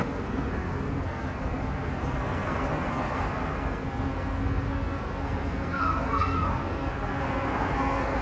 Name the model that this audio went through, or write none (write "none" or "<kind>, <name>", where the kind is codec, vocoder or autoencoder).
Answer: codec, SNAC